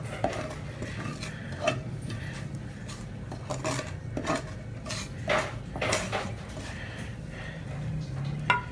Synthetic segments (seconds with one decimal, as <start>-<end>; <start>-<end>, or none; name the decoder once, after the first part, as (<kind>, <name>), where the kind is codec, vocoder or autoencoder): 1.1-3.7 (vocoder, BigVGAN v2); 7.1-7.9